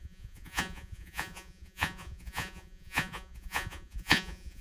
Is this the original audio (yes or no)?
no